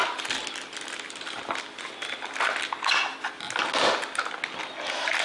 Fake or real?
real